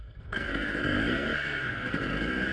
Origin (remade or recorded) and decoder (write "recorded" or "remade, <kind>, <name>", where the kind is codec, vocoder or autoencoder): remade, codec, SNAC